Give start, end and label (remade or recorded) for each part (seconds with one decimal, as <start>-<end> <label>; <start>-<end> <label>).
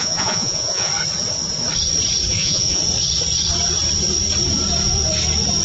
0.0-0.9 remade; 0.9-2.3 recorded; 2.3-2.8 remade; 2.8-5.6 recorded